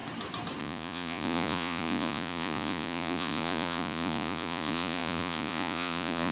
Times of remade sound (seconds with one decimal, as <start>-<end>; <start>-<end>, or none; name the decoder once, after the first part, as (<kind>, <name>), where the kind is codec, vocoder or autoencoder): 0.6-6.3 (vocoder, Vocos)